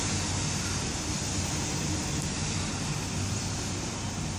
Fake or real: real